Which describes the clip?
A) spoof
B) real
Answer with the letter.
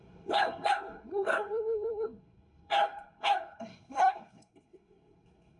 A